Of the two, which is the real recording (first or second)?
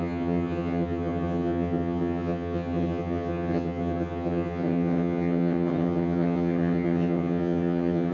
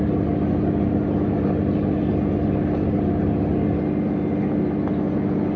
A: second